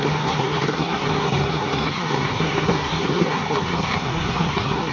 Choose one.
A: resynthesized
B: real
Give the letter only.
A